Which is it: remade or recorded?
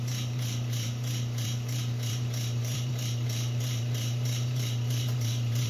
remade